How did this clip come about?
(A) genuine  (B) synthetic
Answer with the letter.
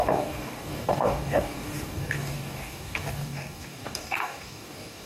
B